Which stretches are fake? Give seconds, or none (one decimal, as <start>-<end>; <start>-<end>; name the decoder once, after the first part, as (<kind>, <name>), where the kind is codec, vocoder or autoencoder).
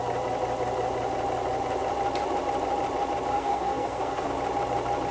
3.3-4.3 (codec, SNAC)